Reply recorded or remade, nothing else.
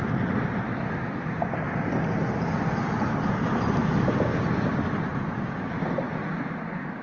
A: recorded